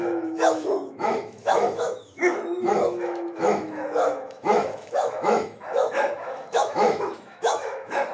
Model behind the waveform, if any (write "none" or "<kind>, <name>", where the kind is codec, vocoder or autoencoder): autoencoder, DAC-VAE